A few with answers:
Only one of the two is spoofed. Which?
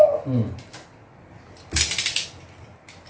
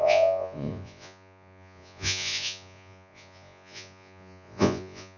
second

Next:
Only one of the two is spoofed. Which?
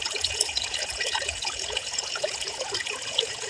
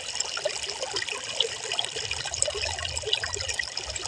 first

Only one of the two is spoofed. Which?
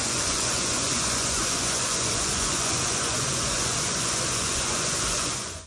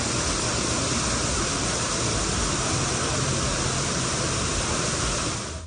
first